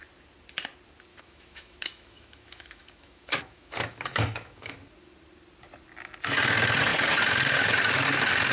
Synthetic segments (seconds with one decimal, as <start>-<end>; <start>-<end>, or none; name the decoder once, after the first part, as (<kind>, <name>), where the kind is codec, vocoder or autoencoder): 1.1-4.9 (autoencoder, DAC-VAE)

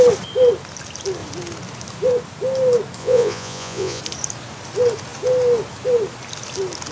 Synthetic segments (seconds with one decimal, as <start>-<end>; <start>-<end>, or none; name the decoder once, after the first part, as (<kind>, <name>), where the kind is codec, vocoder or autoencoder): 3.0-4.0 (vocoder, Vocos)

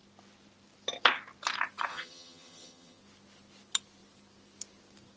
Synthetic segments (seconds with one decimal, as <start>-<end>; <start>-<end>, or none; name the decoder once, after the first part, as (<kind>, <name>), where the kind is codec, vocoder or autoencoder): 1.9-3.0 (vocoder, HiFi-GAN)

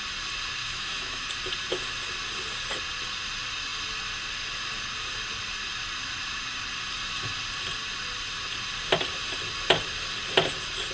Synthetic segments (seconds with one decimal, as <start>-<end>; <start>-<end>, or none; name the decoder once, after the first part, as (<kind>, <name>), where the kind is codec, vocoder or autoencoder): 0.6-1.3 (autoencoder, DAC-VAE)

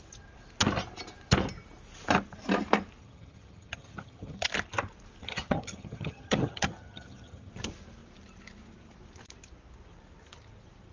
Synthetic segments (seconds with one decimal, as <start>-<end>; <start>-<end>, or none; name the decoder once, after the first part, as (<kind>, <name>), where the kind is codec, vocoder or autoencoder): 3.0-4.5 (vocoder, HiFi-GAN); 5.2-7.5

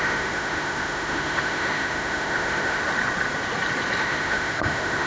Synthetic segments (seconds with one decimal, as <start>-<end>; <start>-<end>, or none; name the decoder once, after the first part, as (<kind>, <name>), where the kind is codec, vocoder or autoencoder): 0.0-2.8 (autoencoder, DAC-VAE); 4.0-5.1

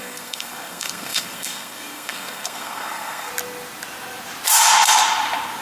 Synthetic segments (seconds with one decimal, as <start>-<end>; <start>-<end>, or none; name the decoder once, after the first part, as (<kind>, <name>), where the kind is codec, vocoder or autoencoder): 0.0-3.3 (codec, SNAC)